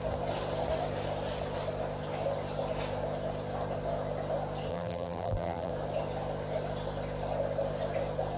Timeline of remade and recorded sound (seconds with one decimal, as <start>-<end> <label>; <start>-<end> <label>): 0.0-4.7 recorded; 4.7-5.7 remade; 5.7-8.4 recorded